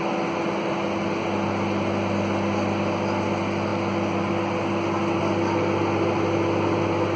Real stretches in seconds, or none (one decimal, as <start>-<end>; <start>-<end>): 0.0-7.2